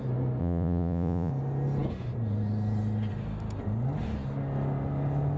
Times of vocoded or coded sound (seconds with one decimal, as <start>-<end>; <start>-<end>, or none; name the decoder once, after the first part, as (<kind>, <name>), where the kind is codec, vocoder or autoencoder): 0.4-1.3 (vocoder, Vocos)